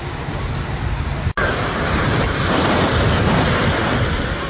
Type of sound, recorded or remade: recorded